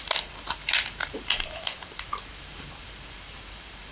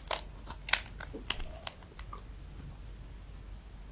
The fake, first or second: first